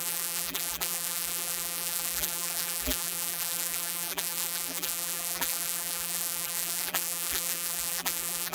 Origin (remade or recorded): remade